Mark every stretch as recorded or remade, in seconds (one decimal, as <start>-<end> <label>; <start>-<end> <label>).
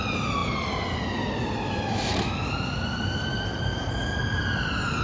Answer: 0.0-5.0 recorded